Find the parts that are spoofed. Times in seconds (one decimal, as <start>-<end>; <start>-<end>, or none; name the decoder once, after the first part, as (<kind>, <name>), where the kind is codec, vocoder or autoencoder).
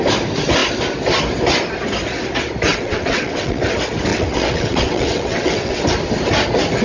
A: 2.7-3.6 (vocoder, WaveNeXt); 4.1-5.8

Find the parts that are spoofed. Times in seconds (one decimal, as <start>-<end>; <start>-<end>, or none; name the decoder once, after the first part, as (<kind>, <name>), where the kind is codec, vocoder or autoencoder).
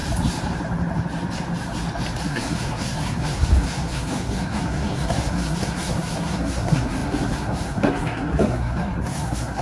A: 2.2-9.6 (codec, SNAC)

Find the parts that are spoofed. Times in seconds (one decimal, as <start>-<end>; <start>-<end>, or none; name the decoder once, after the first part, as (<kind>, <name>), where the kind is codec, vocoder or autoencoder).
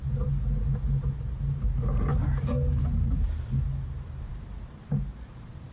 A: none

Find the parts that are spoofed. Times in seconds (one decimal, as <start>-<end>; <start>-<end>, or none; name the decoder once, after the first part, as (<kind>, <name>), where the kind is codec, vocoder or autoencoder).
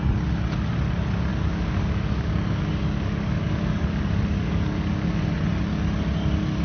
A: 1.3-5.3 (codec, DAC)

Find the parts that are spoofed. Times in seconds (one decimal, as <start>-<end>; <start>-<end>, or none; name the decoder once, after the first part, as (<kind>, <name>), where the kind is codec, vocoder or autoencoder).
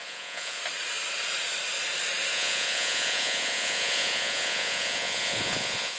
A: 0.0-0.6 (vocoder, Vocos); 2.3-6.0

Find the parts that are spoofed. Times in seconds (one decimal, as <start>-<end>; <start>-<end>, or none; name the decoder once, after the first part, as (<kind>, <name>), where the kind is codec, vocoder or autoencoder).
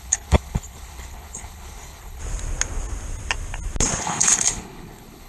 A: 0.0-2.2 (codec, HILCodec); 4.0-5.3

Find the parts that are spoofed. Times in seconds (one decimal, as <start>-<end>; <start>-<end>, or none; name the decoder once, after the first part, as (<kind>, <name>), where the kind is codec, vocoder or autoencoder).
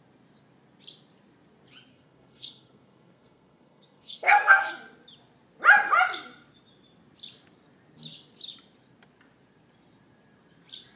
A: 1.9-4.7 (codec, SNAC)